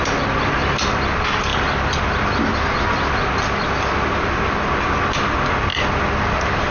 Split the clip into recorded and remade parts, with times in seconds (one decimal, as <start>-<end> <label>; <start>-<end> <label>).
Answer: 0.0-6.7 recorded